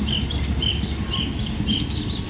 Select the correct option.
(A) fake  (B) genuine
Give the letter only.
B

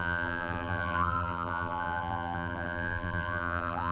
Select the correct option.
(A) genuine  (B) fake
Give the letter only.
B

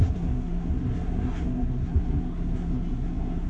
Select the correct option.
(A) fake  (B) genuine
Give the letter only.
A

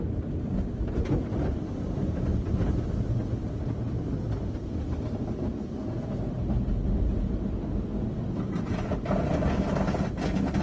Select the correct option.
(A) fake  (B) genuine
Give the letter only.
B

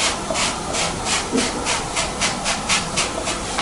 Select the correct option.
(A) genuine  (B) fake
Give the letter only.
B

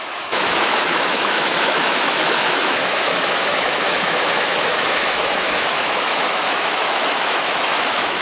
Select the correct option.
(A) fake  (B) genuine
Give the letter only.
A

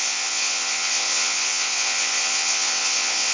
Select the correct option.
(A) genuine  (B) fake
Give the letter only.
B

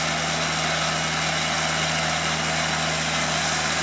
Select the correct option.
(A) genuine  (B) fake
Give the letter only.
A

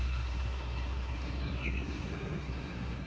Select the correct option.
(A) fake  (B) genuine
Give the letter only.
A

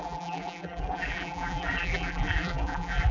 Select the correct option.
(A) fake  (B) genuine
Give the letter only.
A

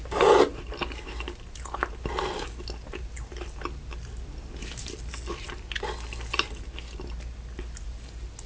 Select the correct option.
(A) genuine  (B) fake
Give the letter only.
A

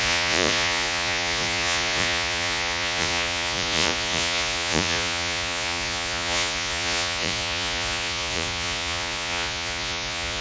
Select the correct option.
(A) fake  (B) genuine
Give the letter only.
A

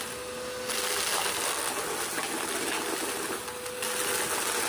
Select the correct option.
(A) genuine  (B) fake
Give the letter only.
A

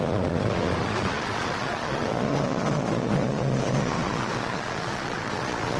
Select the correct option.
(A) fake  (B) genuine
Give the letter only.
A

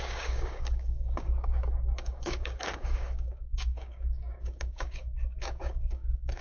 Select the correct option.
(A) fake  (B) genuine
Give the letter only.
A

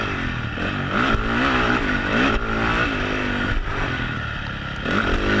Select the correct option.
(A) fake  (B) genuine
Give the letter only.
B